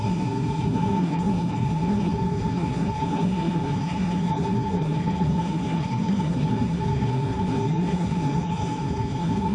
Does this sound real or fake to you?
fake